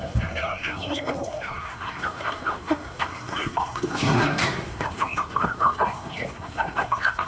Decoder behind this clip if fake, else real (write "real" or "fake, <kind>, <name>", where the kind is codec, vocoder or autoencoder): fake, codec, SNAC